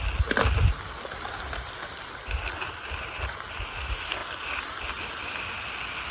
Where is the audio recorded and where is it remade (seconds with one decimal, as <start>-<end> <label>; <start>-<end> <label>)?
0.0-6.1 recorded